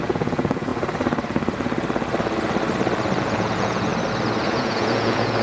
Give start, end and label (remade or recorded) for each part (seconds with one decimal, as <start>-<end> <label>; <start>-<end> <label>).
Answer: 0.0-0.7 remade; 0.7-3.2 recorded; 3.2-3.9 remade; 3.9-4.4 recorded; 4.4-5.4 remade

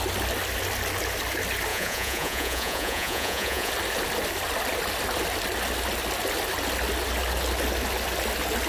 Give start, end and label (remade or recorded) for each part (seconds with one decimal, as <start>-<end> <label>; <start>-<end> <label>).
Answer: 0.0-1.7 recorded; 1.7-3.7 remade; 3.7-8.7 recorded